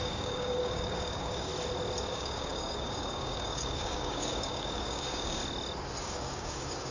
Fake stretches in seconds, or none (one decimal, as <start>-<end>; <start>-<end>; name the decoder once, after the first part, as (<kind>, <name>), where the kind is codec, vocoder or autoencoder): 0.0-1.5 (codec, DAC); 2.1-5.4; 6.0-6.9